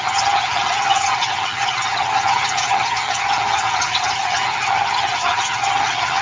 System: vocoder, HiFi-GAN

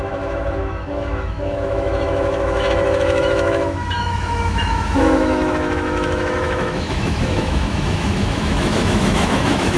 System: autoencoder, DAC-VAE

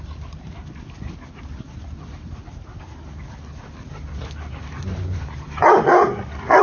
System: none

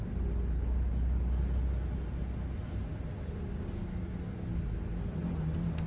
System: none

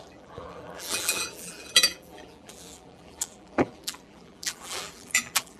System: vocoder, BigVGAN v2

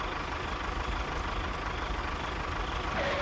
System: none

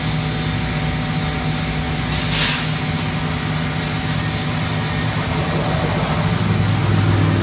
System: none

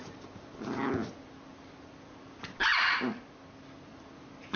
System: none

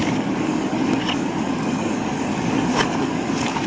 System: codec, DAC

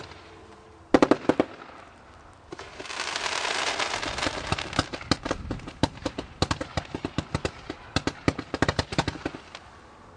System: none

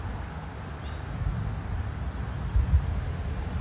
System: none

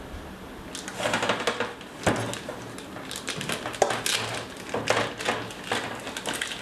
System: none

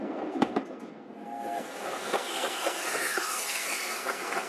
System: codec, SNAC